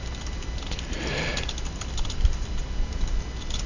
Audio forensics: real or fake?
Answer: real